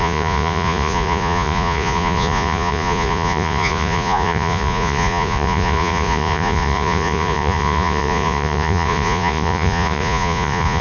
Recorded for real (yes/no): no